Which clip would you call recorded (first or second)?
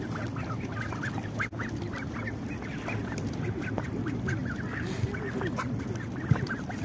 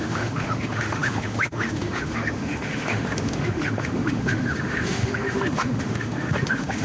first